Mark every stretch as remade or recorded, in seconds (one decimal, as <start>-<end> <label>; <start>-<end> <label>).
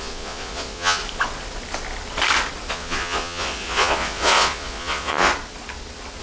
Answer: 0.0-1.0 remade; 1.0-2.7 recorded; 2.7-5.3 remade; 5.3-6.2 recorded